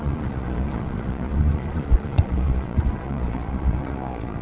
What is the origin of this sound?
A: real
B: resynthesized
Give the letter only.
B